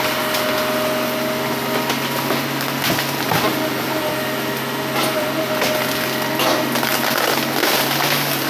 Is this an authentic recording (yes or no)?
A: yes